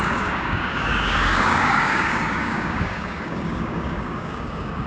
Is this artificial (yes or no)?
yes